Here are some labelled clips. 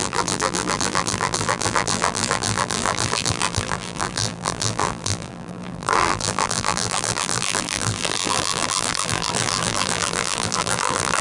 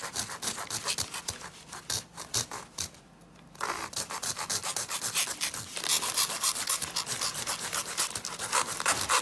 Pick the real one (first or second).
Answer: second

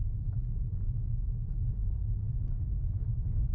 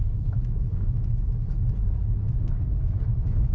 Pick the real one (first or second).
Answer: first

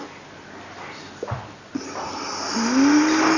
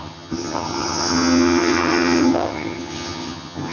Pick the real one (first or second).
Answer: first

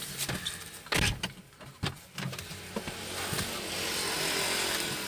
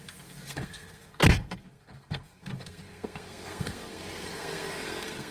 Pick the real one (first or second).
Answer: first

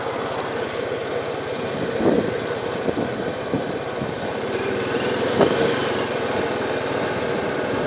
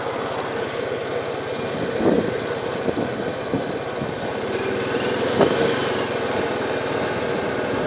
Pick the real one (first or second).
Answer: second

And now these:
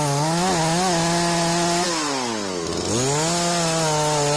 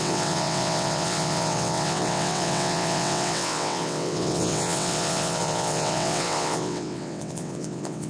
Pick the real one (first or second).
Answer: first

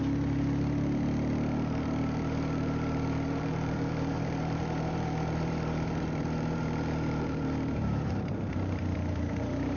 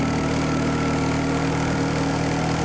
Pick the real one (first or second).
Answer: second